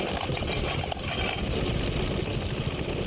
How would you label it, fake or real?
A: real